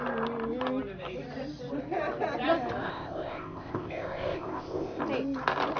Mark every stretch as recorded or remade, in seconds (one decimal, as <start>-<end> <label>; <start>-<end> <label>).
0.0-2.8 recorded; 2.8-5.0 remade; 5.0-5.8 recorded